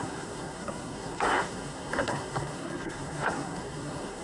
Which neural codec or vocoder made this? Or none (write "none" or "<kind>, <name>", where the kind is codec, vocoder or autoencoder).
codec, SNAC